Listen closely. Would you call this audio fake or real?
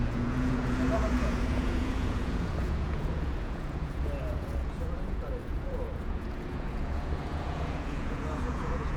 fake